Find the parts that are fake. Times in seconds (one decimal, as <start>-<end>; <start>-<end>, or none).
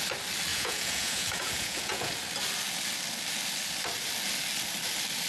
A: 0.5-2.1